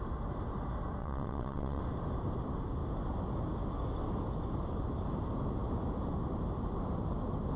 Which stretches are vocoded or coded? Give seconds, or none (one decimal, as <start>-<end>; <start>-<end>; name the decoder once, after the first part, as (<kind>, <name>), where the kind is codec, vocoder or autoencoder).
1.0-1.8 (vocoder, WaveNeXt)